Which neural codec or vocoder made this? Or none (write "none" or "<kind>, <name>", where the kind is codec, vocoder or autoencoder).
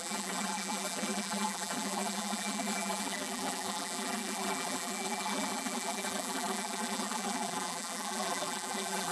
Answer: vocoder, BigVGAN v2